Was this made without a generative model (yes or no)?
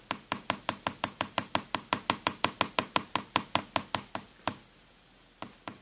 yes